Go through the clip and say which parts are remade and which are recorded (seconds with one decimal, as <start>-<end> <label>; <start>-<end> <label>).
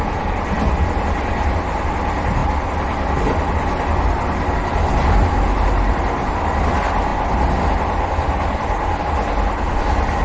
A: 0.0-10.2 recorded